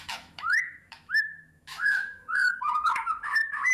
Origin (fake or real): fake